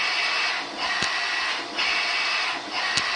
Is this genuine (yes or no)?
yes